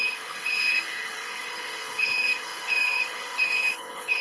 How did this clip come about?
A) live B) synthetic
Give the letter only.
B